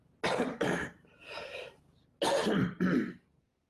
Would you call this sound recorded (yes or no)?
yes